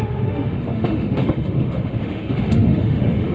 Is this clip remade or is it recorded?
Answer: remade